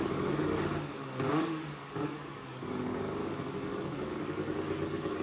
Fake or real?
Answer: fake